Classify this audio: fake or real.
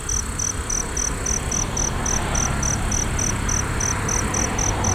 real